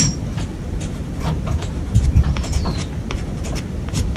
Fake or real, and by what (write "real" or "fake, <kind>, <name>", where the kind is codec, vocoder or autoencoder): fake, vocoder, BigVGAN v2